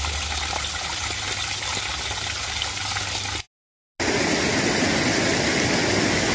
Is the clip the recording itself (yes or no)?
yes